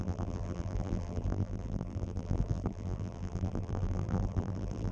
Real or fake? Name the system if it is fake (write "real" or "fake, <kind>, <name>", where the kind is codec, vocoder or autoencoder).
fake, vocoder, BigVGAN v2